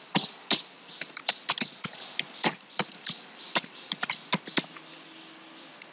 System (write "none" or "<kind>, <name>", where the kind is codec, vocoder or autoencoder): none